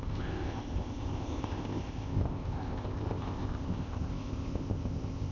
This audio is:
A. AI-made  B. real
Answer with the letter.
A